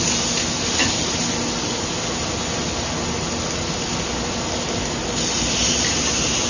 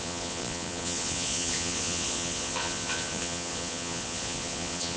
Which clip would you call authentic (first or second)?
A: first